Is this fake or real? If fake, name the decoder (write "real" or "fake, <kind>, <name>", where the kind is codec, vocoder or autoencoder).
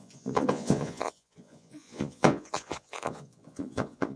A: fake, vocoder, Vocos